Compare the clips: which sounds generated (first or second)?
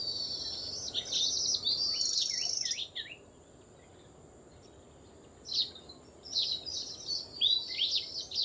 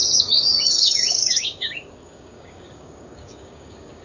second